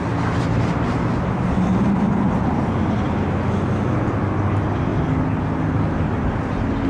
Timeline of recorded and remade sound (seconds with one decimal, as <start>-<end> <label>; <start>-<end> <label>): 0.0-6.9 recorded